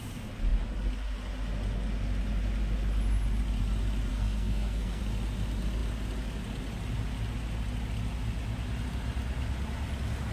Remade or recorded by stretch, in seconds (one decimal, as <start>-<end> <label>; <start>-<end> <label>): 0.0-4.1 recorded; 4.1-5.0 remade; 5.0-10.3 recorded